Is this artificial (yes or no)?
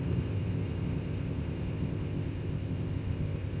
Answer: yes